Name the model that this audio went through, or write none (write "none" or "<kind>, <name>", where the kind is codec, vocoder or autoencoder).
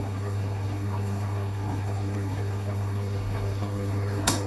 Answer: codec, SNAC